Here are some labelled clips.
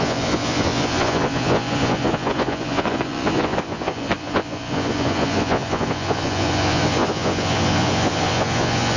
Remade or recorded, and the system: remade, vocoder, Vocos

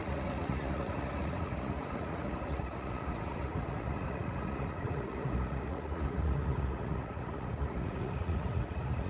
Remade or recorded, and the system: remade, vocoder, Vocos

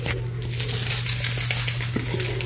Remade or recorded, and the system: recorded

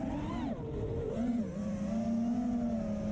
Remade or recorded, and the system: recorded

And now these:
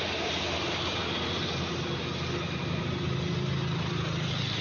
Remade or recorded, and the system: recorded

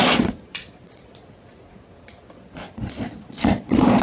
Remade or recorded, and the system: remade, vocoder, Vocos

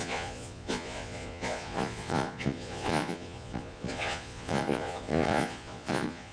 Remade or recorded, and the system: remade, vocoder, Vocos